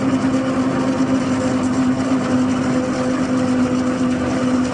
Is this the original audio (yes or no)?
yes